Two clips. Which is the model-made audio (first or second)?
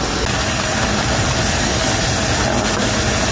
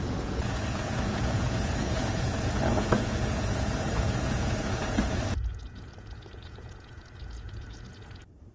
second